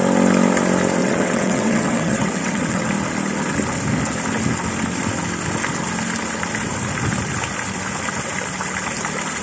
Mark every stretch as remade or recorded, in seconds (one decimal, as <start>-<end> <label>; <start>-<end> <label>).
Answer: 0.0-1.0 recorded; 1.0-2.9 remade; 2.9-9.4 recorded